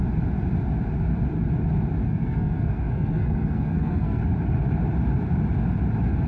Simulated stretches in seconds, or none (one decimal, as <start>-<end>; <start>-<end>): 2.0-4.2

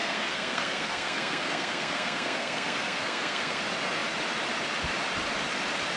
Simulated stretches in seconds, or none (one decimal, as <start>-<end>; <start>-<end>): 0.0-3.6

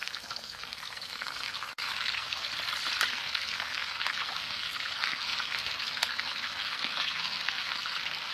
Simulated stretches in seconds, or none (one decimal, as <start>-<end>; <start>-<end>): 0.0-2.5; 3.1-8.3

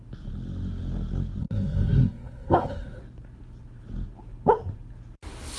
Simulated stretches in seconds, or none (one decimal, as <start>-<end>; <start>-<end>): 1.4-3.0

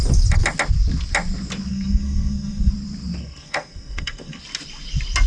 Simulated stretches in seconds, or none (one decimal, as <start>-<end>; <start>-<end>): 1.7-2.7; 3.2-4.4

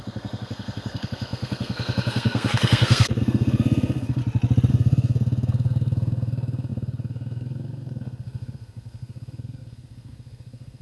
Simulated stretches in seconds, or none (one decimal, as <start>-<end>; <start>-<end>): 0.0-4.2; 4.7-10.8

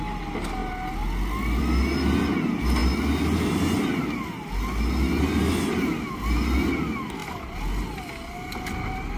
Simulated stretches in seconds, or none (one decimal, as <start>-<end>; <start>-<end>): none

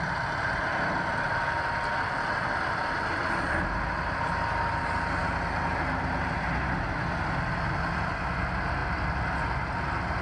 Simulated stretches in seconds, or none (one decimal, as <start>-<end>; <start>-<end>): none